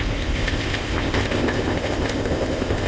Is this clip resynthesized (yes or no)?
yes